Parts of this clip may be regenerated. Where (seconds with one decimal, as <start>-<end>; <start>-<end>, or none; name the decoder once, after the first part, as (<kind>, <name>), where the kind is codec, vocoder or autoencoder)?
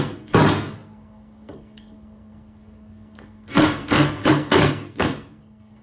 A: 0.0-5.8 (codec, SNAC)